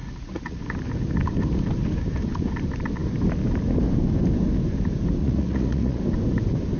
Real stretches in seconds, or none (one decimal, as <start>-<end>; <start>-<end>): 0.6-5.2; 6.0-6.8